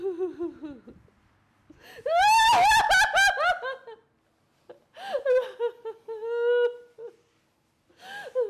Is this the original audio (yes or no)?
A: yes